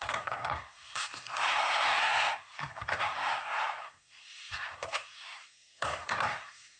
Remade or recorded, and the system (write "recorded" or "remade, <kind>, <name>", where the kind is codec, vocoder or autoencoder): remade, codec, SNAC